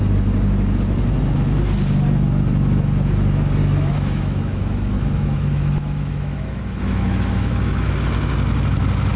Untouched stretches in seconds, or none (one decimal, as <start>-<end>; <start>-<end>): 0.0-3.6; 7.9-9.2